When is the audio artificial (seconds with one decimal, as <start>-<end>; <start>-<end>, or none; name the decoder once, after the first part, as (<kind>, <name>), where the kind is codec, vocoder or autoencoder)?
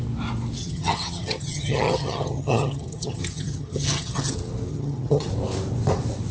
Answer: 0.6-4.3 (vocoder, HiFi-GAN); 4.7-5.3